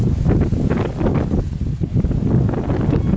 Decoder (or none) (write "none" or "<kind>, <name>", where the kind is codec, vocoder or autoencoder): none